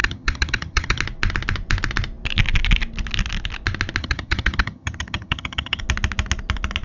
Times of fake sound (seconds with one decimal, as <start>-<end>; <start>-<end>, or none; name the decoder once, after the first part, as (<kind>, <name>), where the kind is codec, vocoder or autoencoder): 0.0-1.0 (vocoder, HiFi-GAN); 4.0-5.8